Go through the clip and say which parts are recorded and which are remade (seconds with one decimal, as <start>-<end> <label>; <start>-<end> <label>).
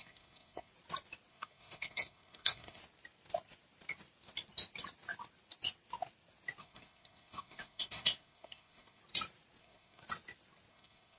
0.0-0.7 remade; 0.7-1.3 recorded; 1.3-2.8 remade; 2.8-6.6 recorded; 6.6-9.0 remade; 9.0-9.6 recorded; 9.6-10.0 remade; 10.0-10.7 recorded; 10.7-11.2 remade